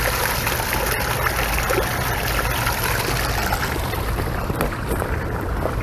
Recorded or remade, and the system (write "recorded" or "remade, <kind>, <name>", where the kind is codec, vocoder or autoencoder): recorded